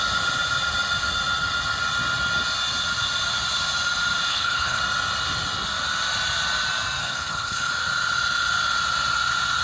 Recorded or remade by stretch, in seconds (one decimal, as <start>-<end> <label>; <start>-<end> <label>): 0.0-4.3 recorded; 4.3-4.8 remade; 4.8-7.0 recorded; 7.0-7.7 remade; 7.7-9.6 recorded